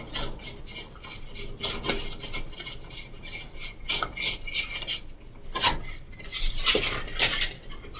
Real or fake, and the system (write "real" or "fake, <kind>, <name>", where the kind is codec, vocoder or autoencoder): real